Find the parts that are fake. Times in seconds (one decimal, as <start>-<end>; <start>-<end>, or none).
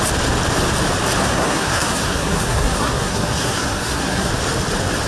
1.2-4.3